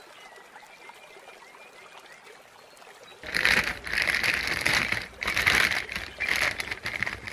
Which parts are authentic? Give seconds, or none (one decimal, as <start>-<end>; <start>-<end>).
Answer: 0.0-3.1; 5.8-7.3